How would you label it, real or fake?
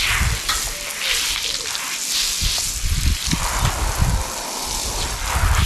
real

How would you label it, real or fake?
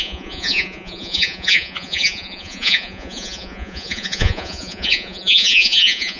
fake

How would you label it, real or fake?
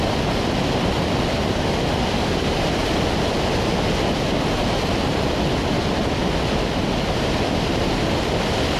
real